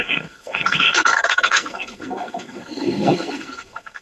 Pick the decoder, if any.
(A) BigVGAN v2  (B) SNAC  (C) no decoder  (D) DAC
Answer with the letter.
B